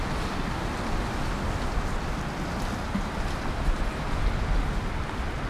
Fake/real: real